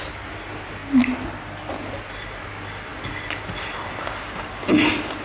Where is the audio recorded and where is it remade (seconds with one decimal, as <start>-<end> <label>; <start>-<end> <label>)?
0.0-5.2 recorded

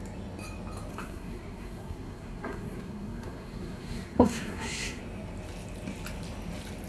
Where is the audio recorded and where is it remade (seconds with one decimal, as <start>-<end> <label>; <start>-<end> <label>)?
0.0-0.9 recorded; 0.9-5.0 remade; 5.0-6.9 recorded

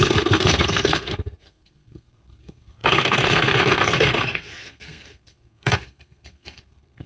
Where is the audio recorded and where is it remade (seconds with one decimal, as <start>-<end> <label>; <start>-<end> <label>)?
0.0-7.1 remade

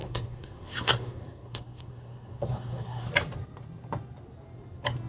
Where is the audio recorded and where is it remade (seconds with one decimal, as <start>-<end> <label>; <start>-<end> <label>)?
0.0-3.1 remade; 3.1-5.1 recorded